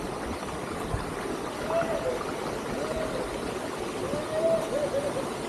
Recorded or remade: recorded